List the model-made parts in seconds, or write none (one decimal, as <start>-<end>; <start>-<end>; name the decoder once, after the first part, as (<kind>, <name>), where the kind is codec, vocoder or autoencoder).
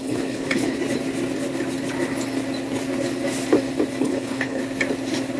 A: 0.0-0.8 (codec, HILCodec); 4.0-4.6